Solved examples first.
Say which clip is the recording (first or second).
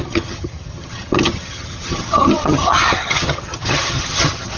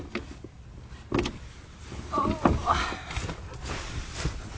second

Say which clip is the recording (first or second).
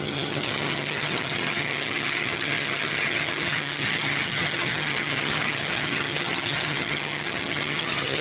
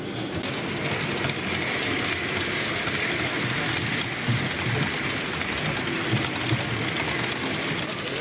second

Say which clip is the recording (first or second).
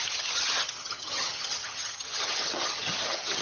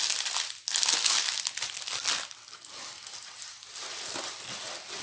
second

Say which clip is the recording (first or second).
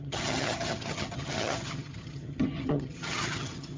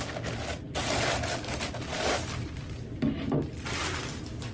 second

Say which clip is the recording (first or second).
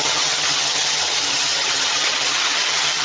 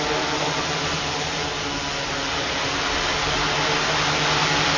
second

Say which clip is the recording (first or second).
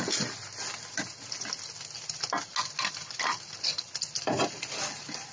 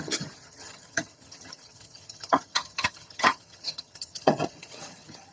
first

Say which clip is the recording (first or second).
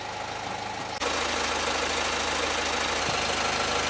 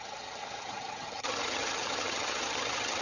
first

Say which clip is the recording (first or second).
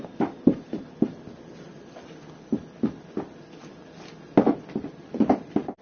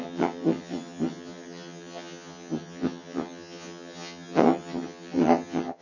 first